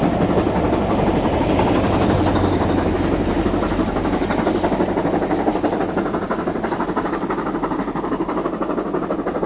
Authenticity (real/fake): real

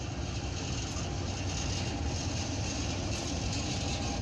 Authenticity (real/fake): real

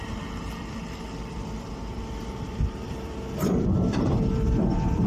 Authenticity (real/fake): fake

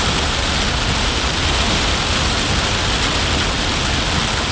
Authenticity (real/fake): real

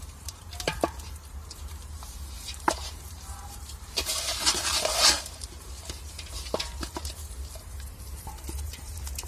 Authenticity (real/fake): fake